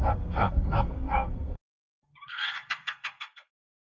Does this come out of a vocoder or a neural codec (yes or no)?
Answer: yes